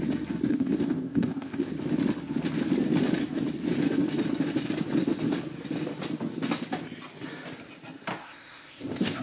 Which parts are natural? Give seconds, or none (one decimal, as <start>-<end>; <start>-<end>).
0.0-0.5; 1.7-8.2

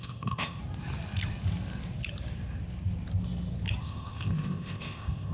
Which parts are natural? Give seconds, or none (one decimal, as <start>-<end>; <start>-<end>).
0.6-3.8